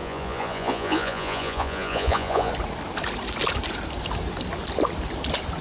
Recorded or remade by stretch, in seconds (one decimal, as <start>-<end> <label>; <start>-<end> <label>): 0.0-2.5 remade; 2.5-5.6 recorded